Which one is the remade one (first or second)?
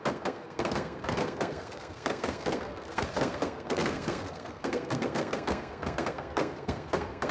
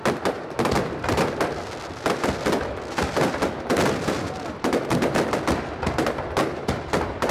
first